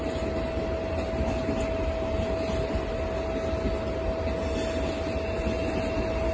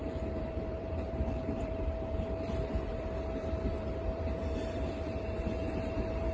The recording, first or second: first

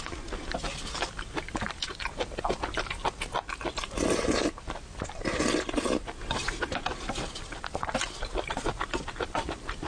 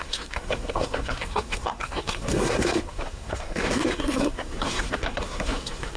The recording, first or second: first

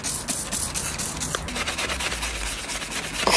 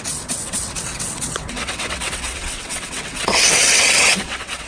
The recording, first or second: first